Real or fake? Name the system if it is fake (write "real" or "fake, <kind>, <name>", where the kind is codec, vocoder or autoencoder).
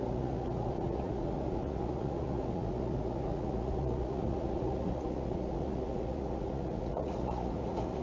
fake, vocoder, Vocos